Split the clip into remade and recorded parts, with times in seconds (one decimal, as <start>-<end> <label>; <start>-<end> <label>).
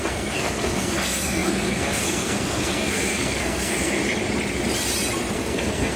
0.0-4.0 remade; 4.0-5.3 recorded; 5.3-6.0 remade